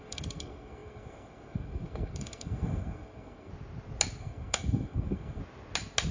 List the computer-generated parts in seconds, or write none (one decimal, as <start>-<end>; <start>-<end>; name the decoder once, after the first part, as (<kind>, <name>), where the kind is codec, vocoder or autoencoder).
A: 0.0-3.5 (codec, SNAC); 4.2-5.4